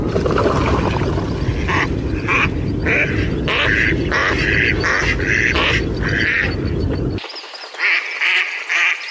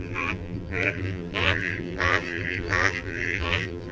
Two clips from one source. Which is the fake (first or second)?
second